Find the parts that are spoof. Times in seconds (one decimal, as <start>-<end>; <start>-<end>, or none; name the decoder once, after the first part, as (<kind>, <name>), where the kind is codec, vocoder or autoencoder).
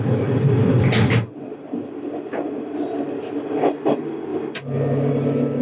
none